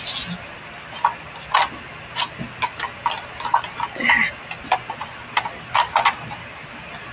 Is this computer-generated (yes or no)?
no